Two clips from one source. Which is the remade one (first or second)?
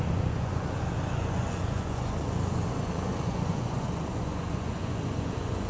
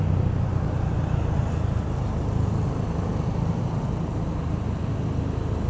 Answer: first